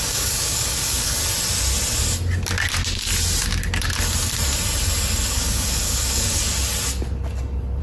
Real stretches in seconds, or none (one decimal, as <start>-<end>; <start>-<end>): 1.2-5.3; 6.4-7.8